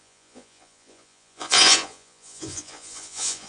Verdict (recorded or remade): remade